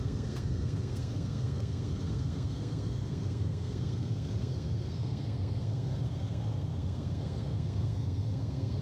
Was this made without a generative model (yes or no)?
no